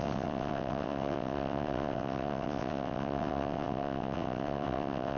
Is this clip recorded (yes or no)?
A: no